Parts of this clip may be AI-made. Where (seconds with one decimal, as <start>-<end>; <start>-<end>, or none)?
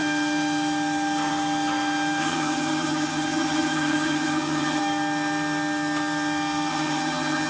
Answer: 2.2-4.8; 6.7-7.5